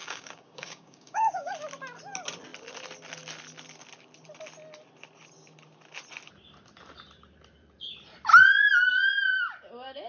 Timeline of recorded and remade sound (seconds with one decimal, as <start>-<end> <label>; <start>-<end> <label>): 0.0-1.5 remade; 1.5-10.1 recorded